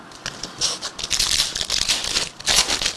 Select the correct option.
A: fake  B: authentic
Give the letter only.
B